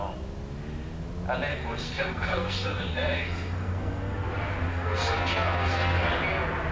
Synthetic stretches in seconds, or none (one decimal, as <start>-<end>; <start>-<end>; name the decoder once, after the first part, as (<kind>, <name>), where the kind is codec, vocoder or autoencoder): 1.5-4.3 (codec, SNAC); 4.7-6.1